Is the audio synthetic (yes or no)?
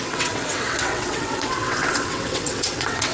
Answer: yes